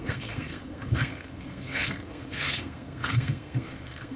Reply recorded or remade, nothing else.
remade